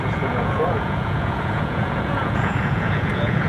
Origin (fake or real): fake